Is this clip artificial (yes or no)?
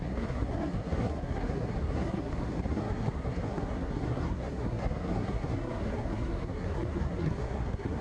yes